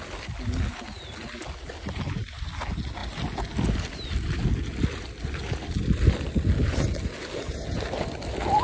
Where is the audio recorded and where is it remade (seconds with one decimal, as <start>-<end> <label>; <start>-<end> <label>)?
0.0-8.6 recorded